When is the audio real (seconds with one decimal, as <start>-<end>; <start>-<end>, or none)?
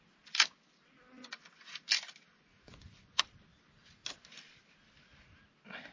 0.0-1.2; 1.8-2.3; 3.2-5.9